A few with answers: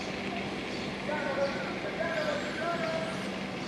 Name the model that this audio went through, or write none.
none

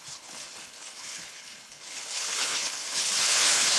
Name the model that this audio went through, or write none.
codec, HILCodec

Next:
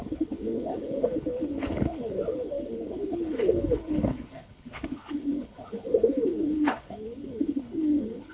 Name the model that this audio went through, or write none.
codec, HILCodec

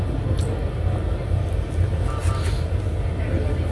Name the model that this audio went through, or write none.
none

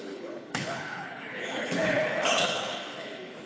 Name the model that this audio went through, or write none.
codec, HILCodec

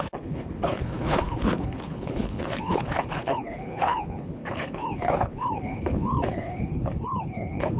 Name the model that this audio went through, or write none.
codec, HILCodec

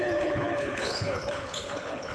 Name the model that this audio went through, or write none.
codec, HILCodec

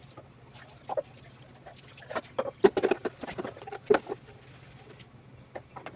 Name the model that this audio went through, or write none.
none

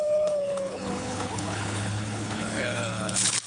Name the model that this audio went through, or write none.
codec, HILCodec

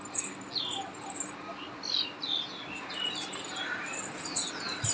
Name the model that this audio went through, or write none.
none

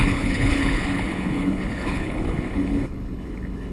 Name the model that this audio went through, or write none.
codec, HILCodec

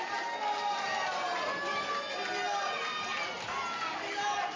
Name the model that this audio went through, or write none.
none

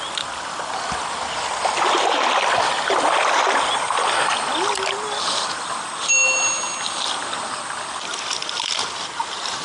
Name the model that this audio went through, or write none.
none